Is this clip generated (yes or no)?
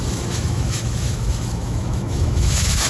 yes